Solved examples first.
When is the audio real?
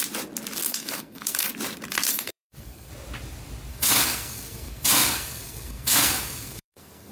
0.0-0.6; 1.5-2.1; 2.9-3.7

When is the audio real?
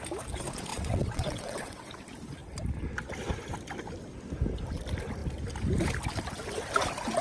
0.0-0.7; 1.9-7.2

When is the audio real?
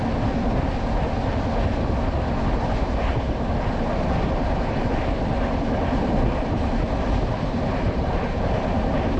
0.0-3.1; 6.5-9.2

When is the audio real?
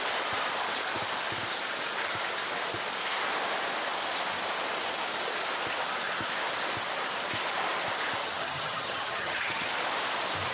0.0-8.2; 9.7-10.5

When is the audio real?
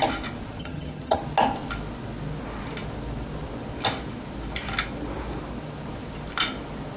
0.0-0.6; 1.2-7.0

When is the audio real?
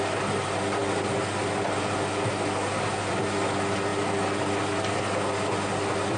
0.0-6.2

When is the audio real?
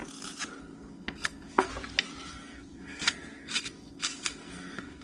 0.0-0.6; 1.7-2.3